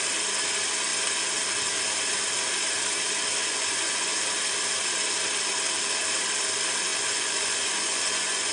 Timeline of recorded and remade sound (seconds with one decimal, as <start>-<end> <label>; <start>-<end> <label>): 0.0-3.4 recorded; 3.4-4.2 remade; 4.2-6.9 recorded; 6.9-8.5 remade